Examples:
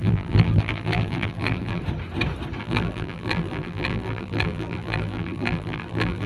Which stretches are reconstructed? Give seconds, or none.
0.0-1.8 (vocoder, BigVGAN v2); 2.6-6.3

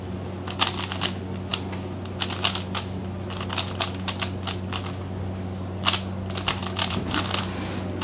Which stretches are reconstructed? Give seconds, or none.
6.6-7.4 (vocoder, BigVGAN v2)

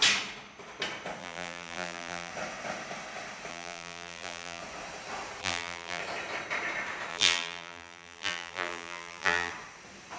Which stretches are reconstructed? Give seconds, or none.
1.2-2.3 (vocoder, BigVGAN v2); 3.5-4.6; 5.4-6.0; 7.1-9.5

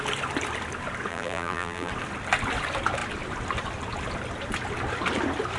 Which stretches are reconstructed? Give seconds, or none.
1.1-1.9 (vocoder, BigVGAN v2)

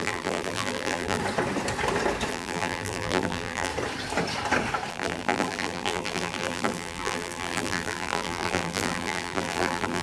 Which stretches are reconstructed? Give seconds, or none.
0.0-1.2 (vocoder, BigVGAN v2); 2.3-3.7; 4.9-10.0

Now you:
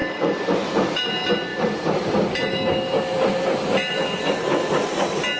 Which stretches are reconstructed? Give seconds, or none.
0.0-1.1 (vocoder, BigVGAN v2); 1.5-4.7

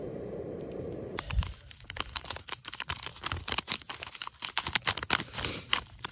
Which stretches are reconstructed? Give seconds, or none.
0.0-3.1 (vocoder, BigVGAN v2); 5.5-6.1